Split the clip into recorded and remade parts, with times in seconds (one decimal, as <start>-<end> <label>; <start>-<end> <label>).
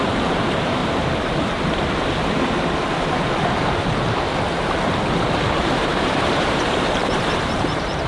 0.0-0.8 remade; 0.8-4.8 recorded; 4.8-8.1 remade